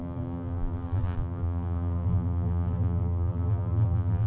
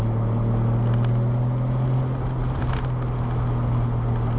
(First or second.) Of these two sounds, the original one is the second